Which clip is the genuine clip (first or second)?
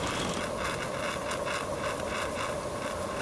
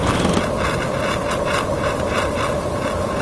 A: first